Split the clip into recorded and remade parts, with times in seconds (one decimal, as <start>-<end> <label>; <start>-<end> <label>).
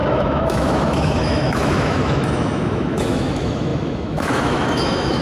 0.0-5.2 remade